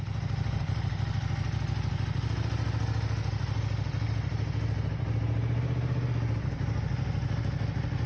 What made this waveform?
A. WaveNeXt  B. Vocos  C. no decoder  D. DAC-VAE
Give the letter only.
C